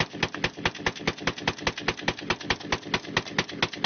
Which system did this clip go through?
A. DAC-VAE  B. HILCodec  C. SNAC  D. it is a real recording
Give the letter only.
D